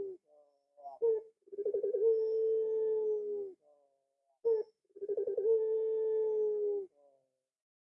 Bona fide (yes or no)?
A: yes